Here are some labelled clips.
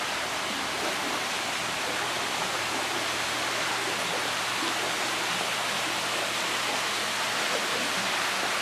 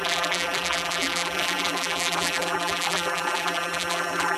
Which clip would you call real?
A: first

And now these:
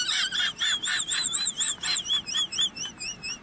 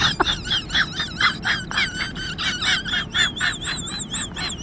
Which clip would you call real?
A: second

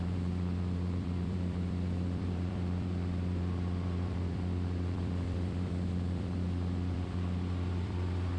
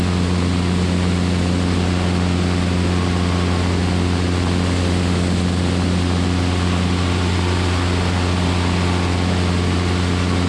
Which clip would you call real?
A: second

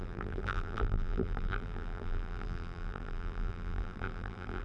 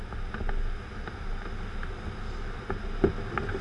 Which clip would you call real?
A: second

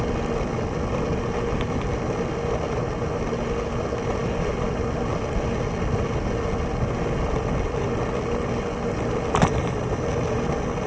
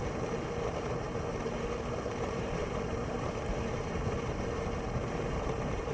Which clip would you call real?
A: first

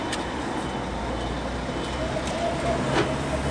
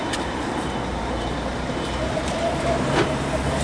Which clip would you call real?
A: first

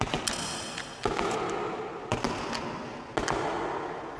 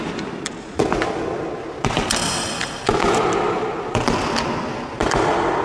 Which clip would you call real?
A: first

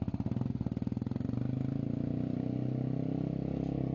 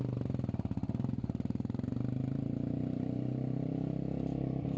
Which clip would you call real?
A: first